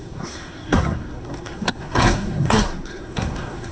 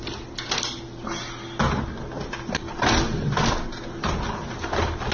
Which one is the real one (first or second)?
second